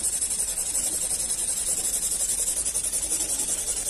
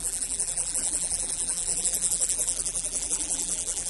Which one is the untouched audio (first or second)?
first